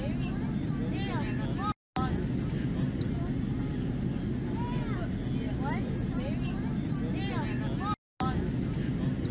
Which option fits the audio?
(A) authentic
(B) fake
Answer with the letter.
A